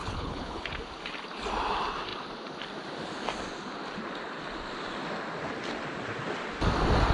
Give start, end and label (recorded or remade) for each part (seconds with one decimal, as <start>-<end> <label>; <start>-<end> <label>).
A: 0.0-0.7 remade; 0.7-7.1 recorded